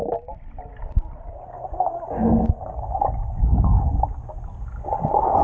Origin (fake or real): real